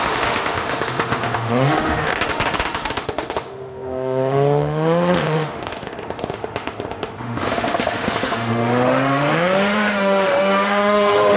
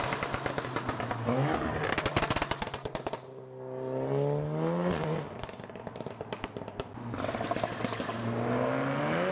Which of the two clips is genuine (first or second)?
second